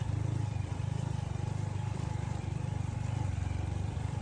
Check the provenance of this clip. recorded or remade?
remade